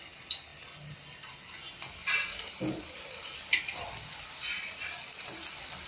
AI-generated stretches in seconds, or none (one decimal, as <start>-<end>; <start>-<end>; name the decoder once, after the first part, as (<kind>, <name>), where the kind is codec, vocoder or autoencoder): none

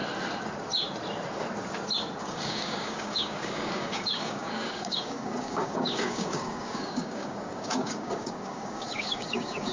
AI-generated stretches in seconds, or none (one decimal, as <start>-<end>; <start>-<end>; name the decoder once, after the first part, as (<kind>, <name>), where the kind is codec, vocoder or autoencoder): 2.2-9.7 (codec, DAC)

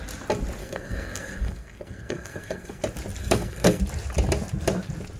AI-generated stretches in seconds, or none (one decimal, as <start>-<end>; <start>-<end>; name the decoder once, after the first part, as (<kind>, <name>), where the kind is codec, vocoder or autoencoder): 0.6-2.8 (codec, SNAC); 3.2-3.8

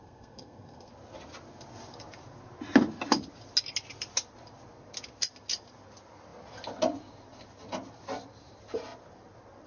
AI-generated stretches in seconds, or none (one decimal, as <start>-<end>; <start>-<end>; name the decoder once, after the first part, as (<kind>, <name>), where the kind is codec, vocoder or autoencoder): 0.0-0.9 (codec, SNAC)